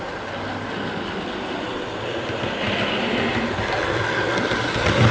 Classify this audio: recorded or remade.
recorded